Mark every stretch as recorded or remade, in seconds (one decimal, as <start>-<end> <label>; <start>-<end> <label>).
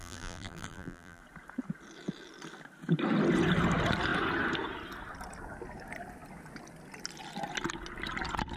0.0-1.2 remade; 1.2-8.6 recorded